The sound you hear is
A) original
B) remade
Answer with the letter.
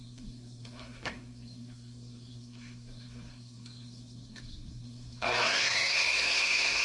B